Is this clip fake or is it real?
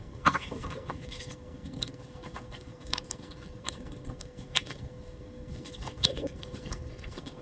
fake